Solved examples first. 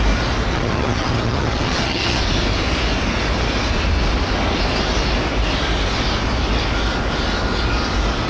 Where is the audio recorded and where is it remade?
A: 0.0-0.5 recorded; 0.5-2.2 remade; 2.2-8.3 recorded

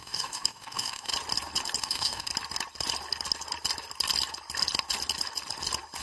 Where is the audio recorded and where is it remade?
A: 0.0-1.1 remade; 1.1-1.8 recorded; 1.8-2.3 remade; 2.3-6.0 recorded